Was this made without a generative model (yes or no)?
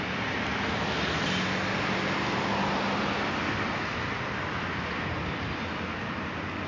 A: yes